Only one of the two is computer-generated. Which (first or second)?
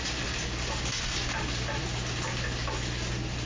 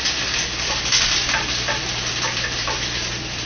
second